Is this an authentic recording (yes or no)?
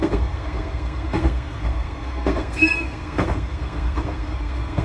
no